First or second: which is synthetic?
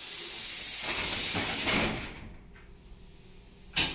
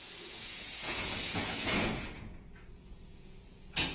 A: second